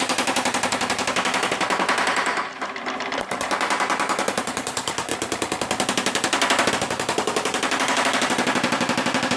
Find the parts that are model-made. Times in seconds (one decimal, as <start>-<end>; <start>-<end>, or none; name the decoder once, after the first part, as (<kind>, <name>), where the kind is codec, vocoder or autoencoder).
0.0-5.1 (vocoder, BigVGAN v2); 6.7-9.4